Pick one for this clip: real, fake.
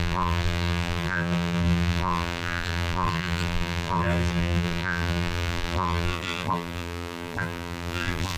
fake